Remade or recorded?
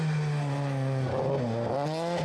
recorded